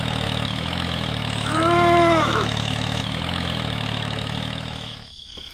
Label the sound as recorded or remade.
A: remade